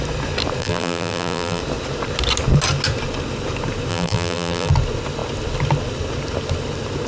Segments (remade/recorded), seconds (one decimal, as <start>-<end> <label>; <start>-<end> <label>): 0.0-0.6 recorded; 0.6-1.6 remade; 1.6-3.9 recorded; 3.9-4.7 remade; 4.7-7.1 recorded

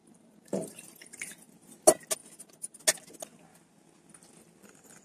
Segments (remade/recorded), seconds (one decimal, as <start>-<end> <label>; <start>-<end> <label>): 0.0-1.5 remade; 1.5-2.2 recorded; 2.2-2.8 remade; 2.8-5.0 recorded

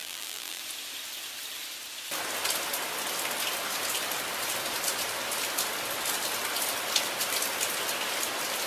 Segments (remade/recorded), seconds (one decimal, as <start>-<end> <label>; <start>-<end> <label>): 0.0-0.6 remade; 0.6-8.7 recorded

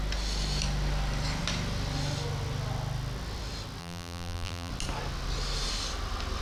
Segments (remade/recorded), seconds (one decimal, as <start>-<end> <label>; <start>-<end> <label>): 0.0-3.8 recorded; 3.8-4.7 remade; 4.7-6.4 recorded

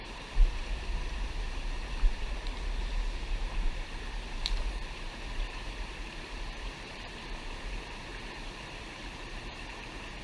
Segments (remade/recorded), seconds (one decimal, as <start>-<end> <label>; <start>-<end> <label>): 0.0-8.1 remade; 8.1-8.7 recorded; 8.7-10.2 remade